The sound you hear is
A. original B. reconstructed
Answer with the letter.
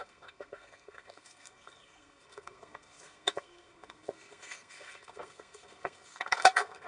B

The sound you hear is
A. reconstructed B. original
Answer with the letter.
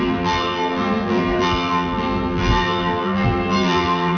A